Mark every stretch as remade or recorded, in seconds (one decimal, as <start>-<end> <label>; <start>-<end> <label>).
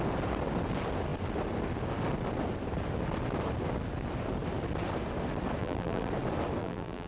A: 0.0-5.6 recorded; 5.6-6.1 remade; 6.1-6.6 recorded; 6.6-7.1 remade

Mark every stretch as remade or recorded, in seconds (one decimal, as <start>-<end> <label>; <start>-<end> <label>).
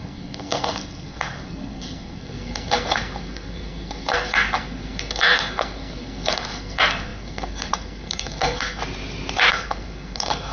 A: 0.0-8.8 remade; 8.8-9.5 recorded; 9.5-10.5 remade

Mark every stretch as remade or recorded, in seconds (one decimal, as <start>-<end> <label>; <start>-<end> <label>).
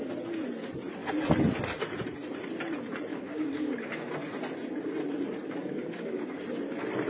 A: 0.0-3.1 recorded; 3.1-4.1 remade; 4.1-5.6 recorded; 5.6-6.2 remade; 6.2-7.1 recorded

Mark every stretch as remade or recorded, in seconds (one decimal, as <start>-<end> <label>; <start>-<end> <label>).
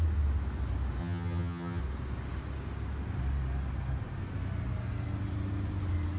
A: 0.0-1.0 recorded; 1.0-1.8 remade; 1.8-6.2 recorded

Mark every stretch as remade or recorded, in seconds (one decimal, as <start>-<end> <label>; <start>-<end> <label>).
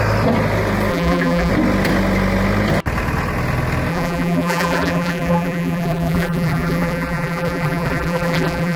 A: 0.0-0.9 recorded; 0.9-1.5 remade; 1.5-3.9 recorded; 3.9-8.8 remade